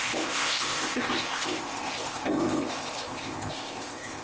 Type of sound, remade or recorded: remade